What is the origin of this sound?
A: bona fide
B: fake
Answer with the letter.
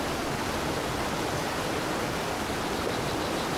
A